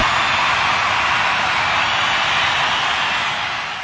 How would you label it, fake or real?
real